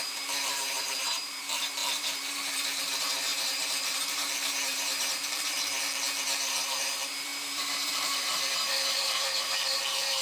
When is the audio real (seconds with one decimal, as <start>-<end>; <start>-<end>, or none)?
none